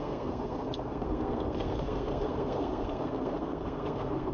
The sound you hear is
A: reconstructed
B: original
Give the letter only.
A